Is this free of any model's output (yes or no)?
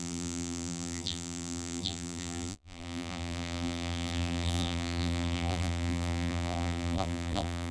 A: no